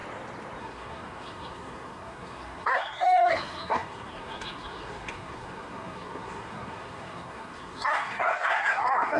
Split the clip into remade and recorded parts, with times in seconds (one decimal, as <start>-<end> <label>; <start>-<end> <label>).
0.0-0.6 recorded; 0.6-9.2 remade